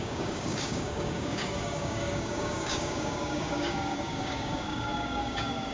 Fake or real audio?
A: fake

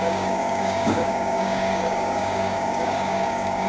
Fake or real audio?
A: fake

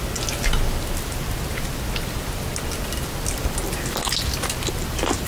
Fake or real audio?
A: real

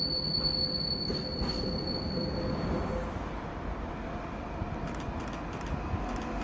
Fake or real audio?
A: real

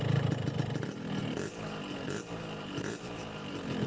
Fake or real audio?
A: real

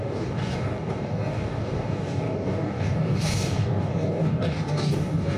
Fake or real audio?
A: fake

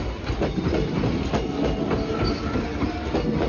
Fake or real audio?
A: real